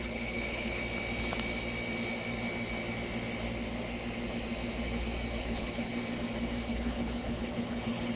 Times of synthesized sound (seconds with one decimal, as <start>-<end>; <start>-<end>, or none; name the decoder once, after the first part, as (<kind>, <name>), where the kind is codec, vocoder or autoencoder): 0.0-0.8 (codec, HILCodec); 5.4-5.9; 6.7-8.2

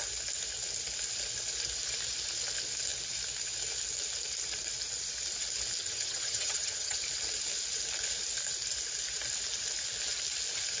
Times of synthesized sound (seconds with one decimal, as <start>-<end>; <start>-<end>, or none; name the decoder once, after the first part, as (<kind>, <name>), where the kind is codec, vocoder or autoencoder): 5.8-7.0 (vocoder, HiFi-GAN)

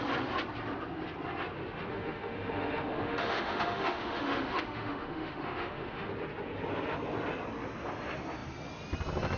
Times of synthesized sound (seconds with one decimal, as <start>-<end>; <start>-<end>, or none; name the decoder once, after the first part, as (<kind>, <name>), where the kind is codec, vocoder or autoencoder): 1.9-6.1 (autoencoder, DAC-VAE)